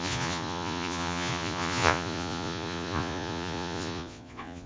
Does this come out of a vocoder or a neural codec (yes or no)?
yes